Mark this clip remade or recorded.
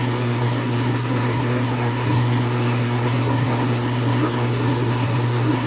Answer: remade